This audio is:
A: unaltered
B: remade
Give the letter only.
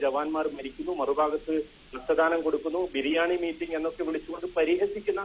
A